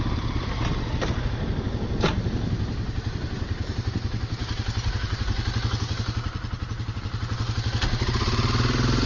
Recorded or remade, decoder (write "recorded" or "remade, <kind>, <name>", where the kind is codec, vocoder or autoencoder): recorded